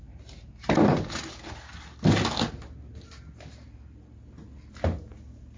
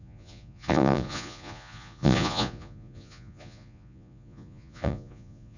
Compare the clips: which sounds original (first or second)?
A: first